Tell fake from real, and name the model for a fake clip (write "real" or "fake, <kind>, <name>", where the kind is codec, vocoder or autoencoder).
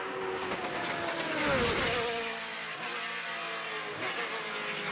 real